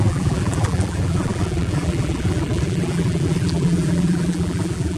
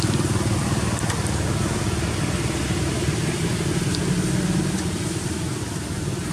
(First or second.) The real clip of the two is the second